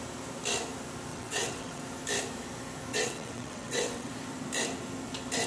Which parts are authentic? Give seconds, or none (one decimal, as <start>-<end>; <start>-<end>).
0.0-1.1; 1.8-2.9; 4.1-5.5